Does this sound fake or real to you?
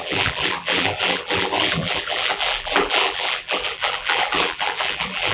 fake